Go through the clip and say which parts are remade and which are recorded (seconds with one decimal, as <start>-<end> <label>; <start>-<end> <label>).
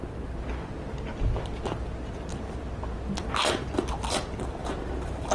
0.0-4.6 recorded; 4.6-5.3 remade